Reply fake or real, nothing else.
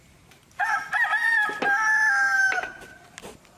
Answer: real